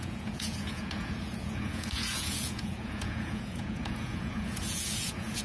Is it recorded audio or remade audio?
remade